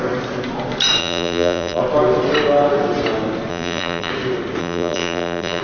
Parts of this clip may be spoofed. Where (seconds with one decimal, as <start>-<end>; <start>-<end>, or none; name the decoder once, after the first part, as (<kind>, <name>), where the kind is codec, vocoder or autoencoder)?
1.0-1.8 (vocoder, BigVGAN v2); 3.5-4.1; 4.6-5.6